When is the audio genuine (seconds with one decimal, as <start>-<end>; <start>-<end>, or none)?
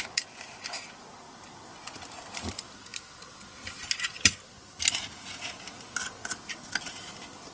0.0-7.5